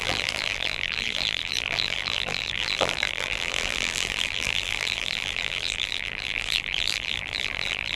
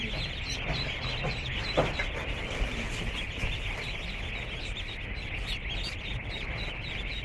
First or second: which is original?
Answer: second